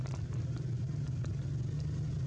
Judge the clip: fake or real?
real